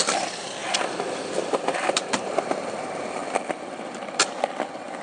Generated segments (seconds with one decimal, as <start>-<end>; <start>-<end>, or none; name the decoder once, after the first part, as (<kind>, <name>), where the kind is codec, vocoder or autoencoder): 0.0-3.2 (vocoder, BigVGAN v2); 4.0-5.0